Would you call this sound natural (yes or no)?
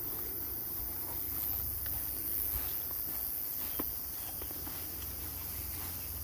yes